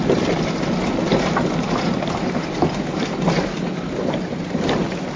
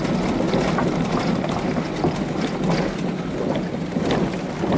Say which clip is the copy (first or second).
first